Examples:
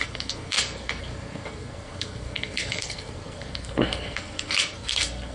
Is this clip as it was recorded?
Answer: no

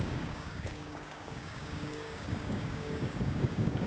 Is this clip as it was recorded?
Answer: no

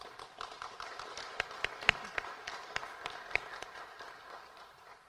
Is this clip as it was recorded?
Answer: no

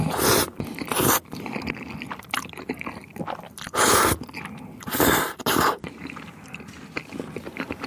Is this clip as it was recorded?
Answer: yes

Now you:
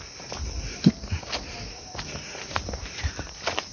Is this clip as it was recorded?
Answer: yes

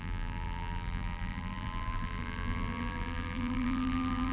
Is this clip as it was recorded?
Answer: no